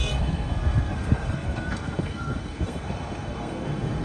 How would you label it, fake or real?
fake